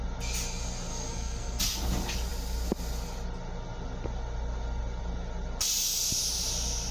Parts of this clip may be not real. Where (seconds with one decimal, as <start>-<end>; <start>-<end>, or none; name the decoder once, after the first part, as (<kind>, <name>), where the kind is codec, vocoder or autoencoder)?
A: 0.9-1.6 (codec, SNAC)